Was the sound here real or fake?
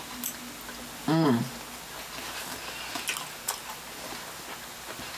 real